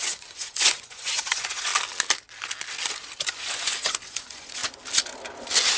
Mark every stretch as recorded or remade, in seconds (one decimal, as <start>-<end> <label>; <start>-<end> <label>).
0.0-1.7 remade; 1.7-3.3 recorded; 3.3-4.6 remade; 4.6-5.8 recorded